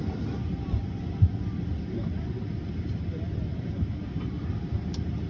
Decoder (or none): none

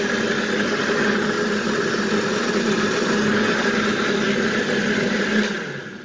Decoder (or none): none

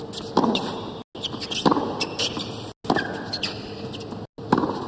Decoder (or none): none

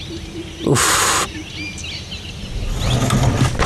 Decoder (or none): none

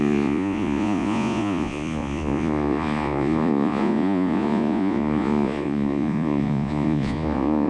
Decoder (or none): vocoder, Vocos